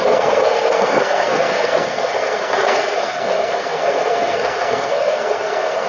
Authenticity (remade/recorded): remade